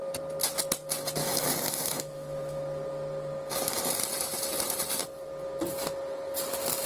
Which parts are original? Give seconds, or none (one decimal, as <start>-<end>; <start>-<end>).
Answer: 0.0-1.2; 2.6-6.9